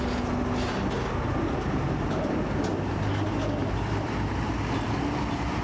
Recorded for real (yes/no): yes